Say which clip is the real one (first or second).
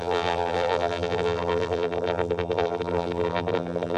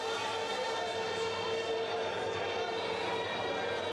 second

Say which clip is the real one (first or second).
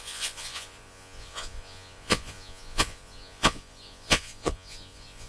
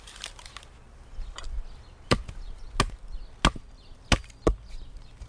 second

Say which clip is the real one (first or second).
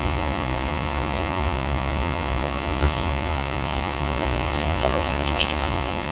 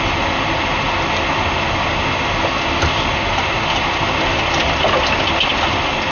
second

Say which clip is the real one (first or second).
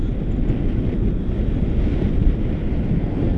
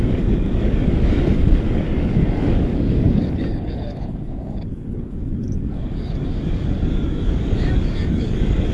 first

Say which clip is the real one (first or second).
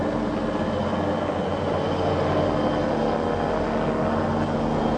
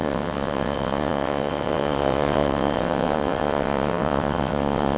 first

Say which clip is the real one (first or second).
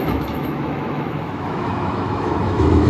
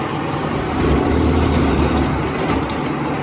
second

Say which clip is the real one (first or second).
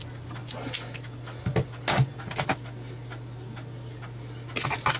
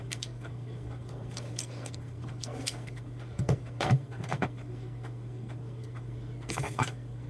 first